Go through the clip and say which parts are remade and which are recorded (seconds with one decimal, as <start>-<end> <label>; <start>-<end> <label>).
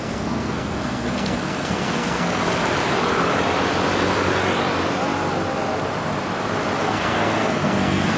0.0-2.4 remade; 2.4-6.8 recorded; 6.8-8.2 remade